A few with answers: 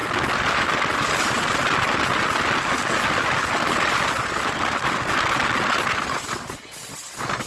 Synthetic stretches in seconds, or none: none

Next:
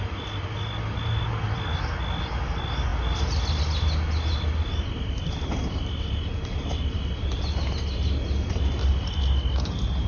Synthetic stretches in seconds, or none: none

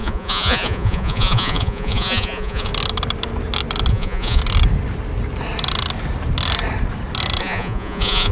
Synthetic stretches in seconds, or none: 0.0-2.7 (vocoder, Vocos); 3.9-4.4; 7.4-8.3

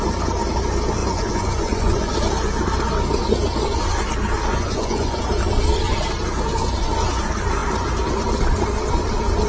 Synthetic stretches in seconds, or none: 1.0-2.1 (vocoder, Vocos); 4.5-5.2

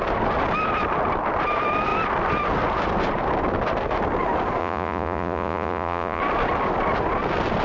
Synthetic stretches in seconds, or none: 4.6-6.2 (vocoder, Vocos)

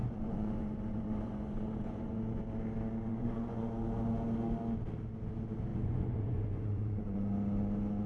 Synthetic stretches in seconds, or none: 0.0-2.4 (vocoder, Vocos); 3.1-3.7; 5.7-7.3